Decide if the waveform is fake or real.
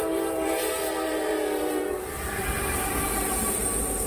fake